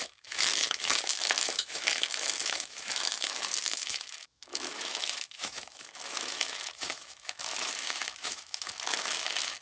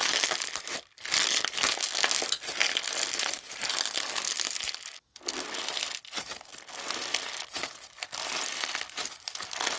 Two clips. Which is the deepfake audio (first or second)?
first